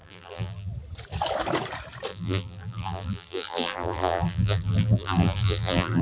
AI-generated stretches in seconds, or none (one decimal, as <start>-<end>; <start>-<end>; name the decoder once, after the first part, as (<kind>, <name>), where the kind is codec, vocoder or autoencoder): 0.0-0.7 (vocoder, BigVGAN v2); 2.1-6.0